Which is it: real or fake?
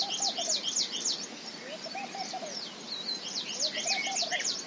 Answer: real